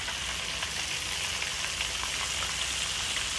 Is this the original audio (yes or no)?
yes